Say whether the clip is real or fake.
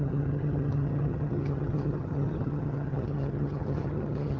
fake